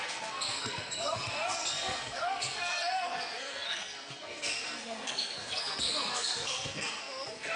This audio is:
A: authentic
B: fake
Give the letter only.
B